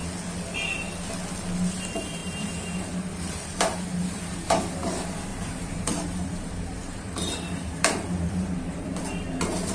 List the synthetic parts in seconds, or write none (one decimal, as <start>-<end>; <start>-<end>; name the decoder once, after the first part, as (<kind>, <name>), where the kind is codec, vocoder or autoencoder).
2.2-4.4 (vocoder, BigVGAN v2); 5.3-9.0